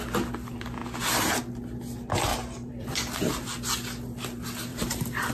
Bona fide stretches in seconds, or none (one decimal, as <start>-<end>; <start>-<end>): 0.0-2.3; 3.6-4.7